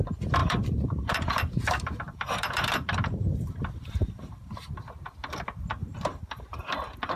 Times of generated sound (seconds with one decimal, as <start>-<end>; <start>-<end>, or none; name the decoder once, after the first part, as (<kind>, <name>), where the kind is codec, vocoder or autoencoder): 0.4-4.7 (vocoder, BigVGAN v2); 5.8-6.7